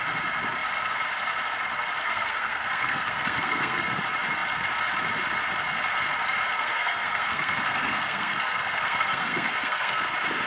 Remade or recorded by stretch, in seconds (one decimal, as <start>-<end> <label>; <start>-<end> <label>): 0.0-2.0 recorded; 2.0-4.0 remade; 4.0-6.4 recorded; 6.4-10.0 remade; 10.0-10.5 recorded